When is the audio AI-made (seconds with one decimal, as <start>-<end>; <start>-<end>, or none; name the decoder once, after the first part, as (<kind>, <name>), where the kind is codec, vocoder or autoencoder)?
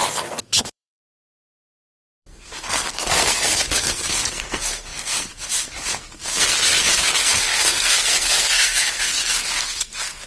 0.0-10.3 (codec, SNAC)